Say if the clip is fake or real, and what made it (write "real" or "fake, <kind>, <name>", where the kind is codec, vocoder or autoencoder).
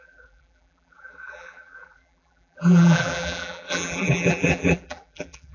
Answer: fake, vocoder, BigVGAN v2